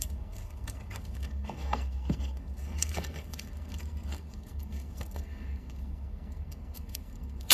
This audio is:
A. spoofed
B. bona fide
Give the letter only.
A